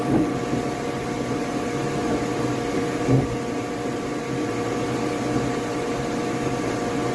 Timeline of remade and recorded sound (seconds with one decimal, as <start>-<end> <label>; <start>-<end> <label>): 0.0-7.1 recorded

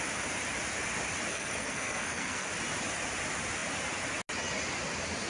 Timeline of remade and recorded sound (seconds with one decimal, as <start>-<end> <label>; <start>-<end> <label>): 0.0-1.3 recorded; 1.3-2.5 remade; 2.5-5.3 recorded

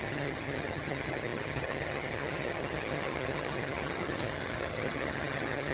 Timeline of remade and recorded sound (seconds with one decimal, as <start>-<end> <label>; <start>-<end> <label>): 0.0-5.7 remade

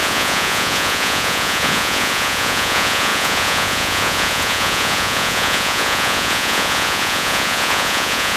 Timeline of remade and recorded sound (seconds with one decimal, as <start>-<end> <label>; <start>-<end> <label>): 0.0-8.4 remade

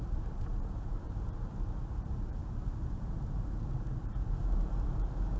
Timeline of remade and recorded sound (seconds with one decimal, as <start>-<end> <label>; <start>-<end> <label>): 0.0-5.4 remade

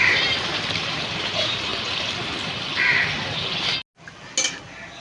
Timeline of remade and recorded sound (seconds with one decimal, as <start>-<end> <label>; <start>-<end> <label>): 0.0-1.7 remade; 1.7-5.0 recorded